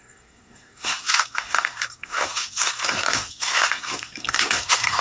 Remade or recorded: remade